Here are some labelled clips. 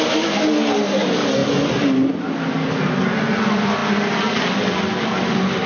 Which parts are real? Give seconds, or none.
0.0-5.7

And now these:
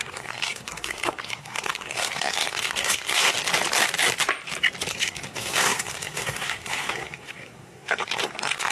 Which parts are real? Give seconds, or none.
3.3-4.9

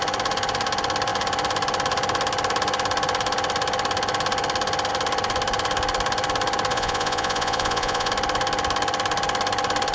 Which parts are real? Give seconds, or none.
0.0-6.7; 8.1-9.9

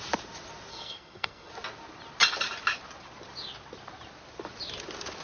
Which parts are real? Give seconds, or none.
0.0-0.7; 1.5-5.2

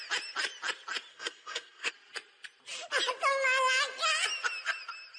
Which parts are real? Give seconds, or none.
0.0-1.1; 1.9-5.2

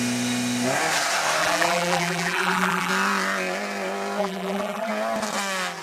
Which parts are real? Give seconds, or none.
0.0-1.4; 2.9-4.2; 4.9-5.8

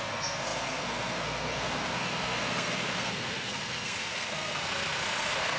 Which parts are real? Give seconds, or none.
none